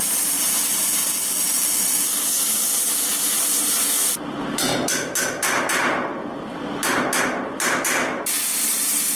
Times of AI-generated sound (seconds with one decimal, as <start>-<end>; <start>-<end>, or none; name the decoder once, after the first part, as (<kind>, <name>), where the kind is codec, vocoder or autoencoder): 0.0-1.0 (vocoder, BigVGAN v2); 1.6-2.1; 3.3-4.7; 7.2-9.2